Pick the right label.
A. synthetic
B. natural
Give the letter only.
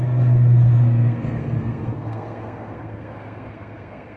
A